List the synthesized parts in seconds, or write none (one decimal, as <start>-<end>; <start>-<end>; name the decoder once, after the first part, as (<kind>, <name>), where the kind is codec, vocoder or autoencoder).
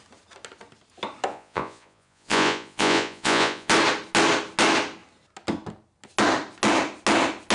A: 1.3-3.7 (vocoder, Vocos)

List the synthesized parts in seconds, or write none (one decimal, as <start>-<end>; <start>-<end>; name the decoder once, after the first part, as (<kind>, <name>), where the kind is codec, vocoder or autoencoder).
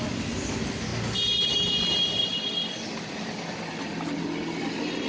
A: 2.3-2.9 (vocoder, BigVGAN v2)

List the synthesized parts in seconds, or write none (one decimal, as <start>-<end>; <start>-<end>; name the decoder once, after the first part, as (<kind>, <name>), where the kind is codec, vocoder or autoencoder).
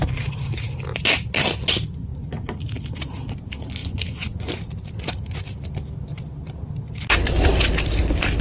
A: 3.8-4.5 (vocoder, Vocos)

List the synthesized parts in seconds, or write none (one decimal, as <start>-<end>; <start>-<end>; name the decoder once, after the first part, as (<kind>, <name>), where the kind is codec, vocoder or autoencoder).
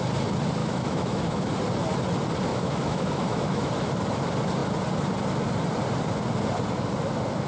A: 0.6-1.5 (autoencoder, DAC-VAE); 2.5-3.7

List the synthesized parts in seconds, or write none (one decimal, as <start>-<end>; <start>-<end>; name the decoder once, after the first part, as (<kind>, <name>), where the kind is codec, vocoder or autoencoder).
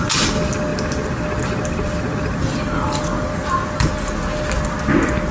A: none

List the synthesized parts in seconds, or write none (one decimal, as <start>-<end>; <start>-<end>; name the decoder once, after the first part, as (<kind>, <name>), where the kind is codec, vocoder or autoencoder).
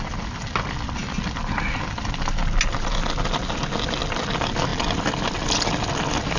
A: none